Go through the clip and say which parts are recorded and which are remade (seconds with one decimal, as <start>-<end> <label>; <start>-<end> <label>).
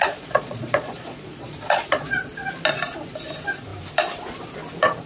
0.0-2.3 remade; 2.3-5.1 recorded